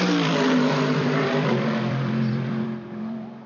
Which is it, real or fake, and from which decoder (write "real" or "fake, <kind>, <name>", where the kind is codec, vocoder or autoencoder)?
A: fake, vocoder, BigVGAN v2